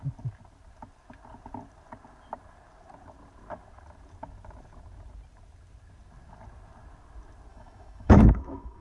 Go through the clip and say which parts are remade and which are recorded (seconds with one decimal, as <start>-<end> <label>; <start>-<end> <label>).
0.0-7.5 recorded; 7.5-8.8 remade